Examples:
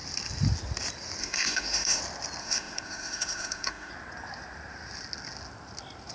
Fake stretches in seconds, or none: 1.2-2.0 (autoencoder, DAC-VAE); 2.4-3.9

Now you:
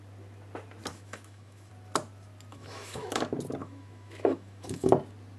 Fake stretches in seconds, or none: 0.9-1.7 (autoencoder, DAC-VAE); 2.5-3.2; 3.6-4.9

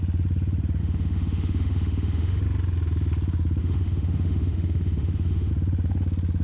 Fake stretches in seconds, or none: 0.8-2.4 (autoencoder, DAC-VAE); 3.6-5.5

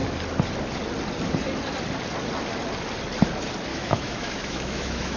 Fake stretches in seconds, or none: 3.7-5.2 (autoencoder, DAC-VAE)

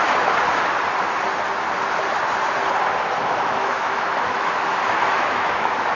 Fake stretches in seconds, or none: 3.2-5.9 (autoencoder, DAC-VAE)

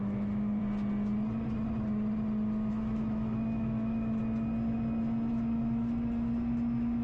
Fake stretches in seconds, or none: 0.0-0.6 (autoencoder, DAC-VAE); 2.7-4.2; 5.3-7.0

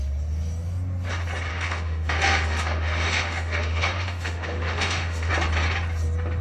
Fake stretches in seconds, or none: 1.5-5.3 (autoencoder, DAC-VAE)

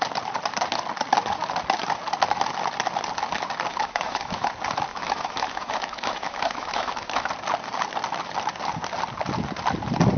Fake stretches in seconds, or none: 3.7-4.5 (autoencoder, DAC-VAE); 4.9-7.3